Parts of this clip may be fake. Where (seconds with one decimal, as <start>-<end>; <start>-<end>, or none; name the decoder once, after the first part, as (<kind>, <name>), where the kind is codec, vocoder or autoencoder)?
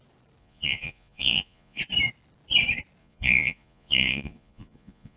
0.4-1.8 (vocoder, Vocos); 3.0-5.2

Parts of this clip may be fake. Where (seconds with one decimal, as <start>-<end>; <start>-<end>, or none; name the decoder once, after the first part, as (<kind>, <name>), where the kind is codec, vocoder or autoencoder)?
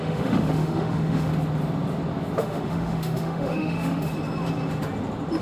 0.0-1.3 (autoencoder, DAC-VAE); 2.4-4.1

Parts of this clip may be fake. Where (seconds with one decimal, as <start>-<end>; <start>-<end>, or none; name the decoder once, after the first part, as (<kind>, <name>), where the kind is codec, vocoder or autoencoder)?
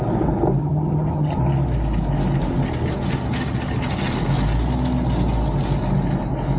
0.6-1.4 (vocoder, HiFi-GAN)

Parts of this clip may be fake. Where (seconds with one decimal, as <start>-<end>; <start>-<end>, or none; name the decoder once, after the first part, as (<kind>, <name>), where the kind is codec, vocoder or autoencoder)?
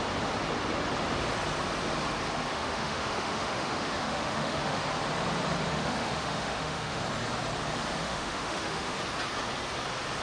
2.5-4.8 (autoencoder, DAC-VAE); 5.7-7.0; 8.0-9.0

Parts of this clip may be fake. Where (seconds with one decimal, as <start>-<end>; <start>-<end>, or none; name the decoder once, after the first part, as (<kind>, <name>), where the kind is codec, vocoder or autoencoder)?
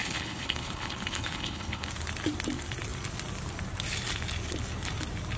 0.0-1.9 (codec, HILCodec)